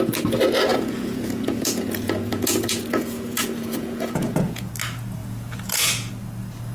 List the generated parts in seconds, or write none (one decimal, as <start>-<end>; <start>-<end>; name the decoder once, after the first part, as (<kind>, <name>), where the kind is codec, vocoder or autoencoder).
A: 0.7-4.7 (vocoder, Vocos); 5.2-6.1